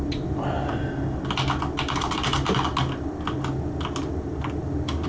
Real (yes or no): yes